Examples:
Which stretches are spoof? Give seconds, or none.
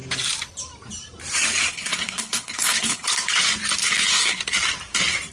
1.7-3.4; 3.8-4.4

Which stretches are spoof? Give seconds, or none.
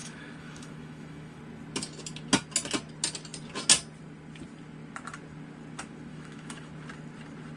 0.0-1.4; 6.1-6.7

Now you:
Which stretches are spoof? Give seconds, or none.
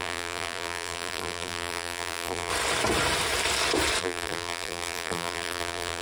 0.0-2.5; 4.0-6.0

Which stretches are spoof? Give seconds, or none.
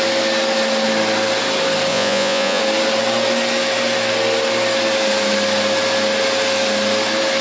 1.9-2.6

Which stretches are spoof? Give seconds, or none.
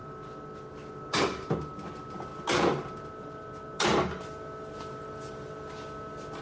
none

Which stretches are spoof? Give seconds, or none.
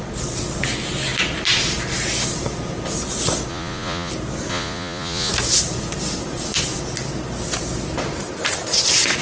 3.5-4.1; 4.5-5.3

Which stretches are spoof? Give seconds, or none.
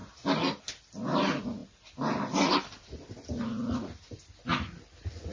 none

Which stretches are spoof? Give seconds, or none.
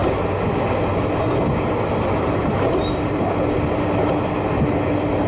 2.4-3.2